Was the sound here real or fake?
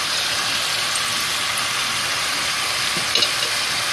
real